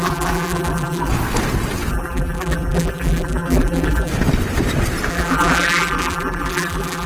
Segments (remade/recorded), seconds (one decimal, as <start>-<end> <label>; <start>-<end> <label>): 0.0-1.1 remade; 1.1-1.9 recorded; 1.9-4.1 remade; 4.1-5.1 recorded; 5.1-7.1 remade